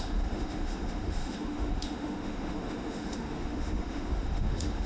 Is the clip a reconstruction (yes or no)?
yes